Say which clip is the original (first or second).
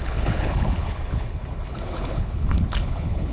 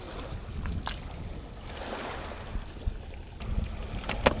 second